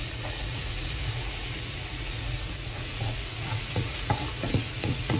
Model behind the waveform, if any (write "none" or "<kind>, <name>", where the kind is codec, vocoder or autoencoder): vocoder, Vocos